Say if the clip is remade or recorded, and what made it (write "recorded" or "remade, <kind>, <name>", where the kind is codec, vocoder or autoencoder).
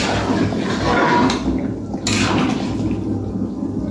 recorded